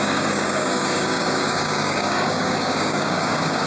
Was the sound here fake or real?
fake